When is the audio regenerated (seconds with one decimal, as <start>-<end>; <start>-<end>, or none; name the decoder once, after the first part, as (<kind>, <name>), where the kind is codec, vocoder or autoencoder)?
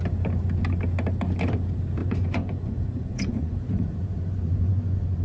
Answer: 2.0-5.2 (vocoder, Vocos)